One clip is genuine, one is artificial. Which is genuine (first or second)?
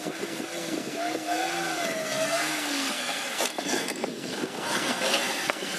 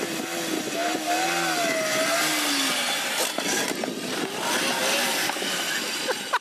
second